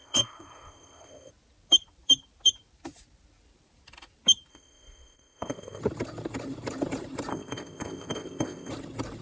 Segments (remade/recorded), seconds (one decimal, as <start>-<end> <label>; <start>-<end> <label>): 0.0-1.3 remade; 1.3-4.5 recorded; 4.5-5.8 remade; 5.8-7.3 recorded; 7.3-8.7 remade; 8.7-9.2 recorded